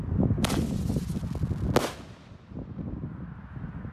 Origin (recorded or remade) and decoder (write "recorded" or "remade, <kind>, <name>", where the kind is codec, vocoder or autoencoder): recorded